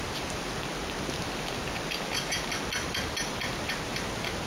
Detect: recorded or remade recorded